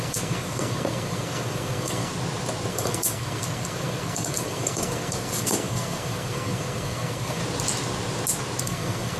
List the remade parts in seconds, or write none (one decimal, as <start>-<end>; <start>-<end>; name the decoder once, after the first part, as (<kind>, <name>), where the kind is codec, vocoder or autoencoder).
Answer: 0.0-2.1 (codec, SNAC); 2.7-7.4; 8.6-9.2